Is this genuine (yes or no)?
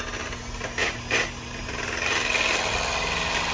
yes